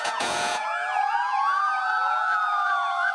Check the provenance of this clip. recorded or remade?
remade